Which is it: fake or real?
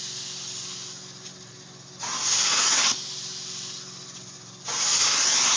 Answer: real